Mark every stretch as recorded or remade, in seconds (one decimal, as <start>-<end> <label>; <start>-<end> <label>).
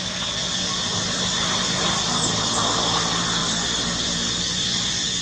0.0-3.4 recorded; 3.4-4.4 remade; 4.4-5.2 recorded